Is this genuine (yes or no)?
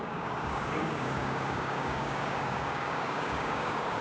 no